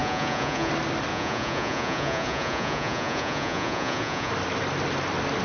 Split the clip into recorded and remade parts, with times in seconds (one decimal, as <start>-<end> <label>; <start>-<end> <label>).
0.0-0.7 remade; 0.7-1.1 recorded; 1.1-4.3 remade; 4.3-5.4 recorded